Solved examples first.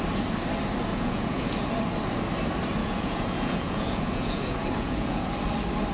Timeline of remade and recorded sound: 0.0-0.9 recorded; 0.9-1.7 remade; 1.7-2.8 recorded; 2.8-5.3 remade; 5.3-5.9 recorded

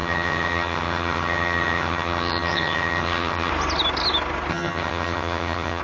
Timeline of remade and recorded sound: 0.0-3.5 remade; 3.5-4.5 recorded; 4.5-5.8 remade

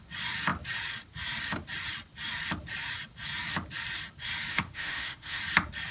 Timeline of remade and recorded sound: 0.0-4.5 recorded; 4.5-5.4 remade; 5.4-5.9 recorded

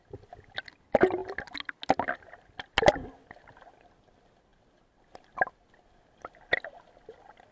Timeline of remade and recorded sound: 0.0-7.5 recorded

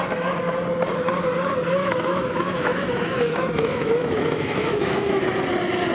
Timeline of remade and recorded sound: 0.0-1.8 recorded; 1.8-5.2 remade; 5.2-5.9 recorded